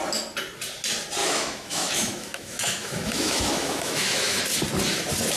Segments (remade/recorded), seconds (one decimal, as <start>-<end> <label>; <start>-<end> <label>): 0.0-1.2 recorded; 1.2-4.4 remade; 4.4-5.4 recorded